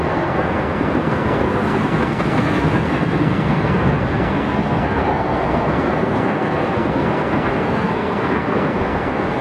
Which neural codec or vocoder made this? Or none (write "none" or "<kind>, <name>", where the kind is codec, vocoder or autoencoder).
codec, SNAC